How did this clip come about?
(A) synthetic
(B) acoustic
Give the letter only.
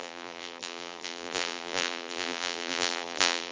A